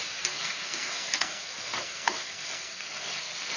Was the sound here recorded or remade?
remade